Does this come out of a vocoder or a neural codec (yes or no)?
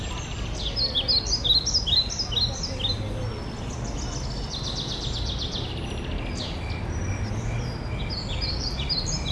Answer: no